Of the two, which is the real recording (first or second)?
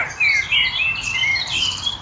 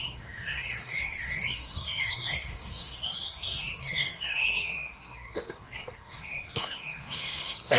first